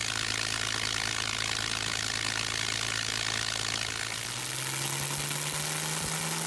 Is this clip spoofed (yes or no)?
no